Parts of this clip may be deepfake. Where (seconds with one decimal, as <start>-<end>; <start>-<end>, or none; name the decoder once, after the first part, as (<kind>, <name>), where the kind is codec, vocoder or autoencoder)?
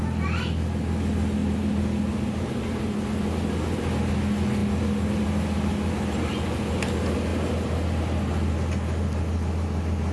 none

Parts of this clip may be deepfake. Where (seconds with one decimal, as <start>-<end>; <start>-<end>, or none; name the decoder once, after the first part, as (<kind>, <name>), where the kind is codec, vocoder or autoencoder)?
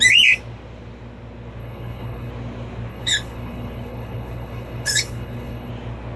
1.6-2.3 (codec, HILCodec); 2.9-5.7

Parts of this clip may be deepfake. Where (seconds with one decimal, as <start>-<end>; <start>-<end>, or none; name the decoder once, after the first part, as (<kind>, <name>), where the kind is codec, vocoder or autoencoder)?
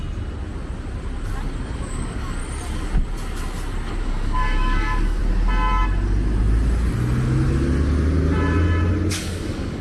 1.6-2.4 (codec, DAC); 4.0-5.2; 9.1-9.8